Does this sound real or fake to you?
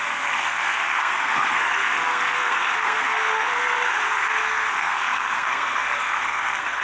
fake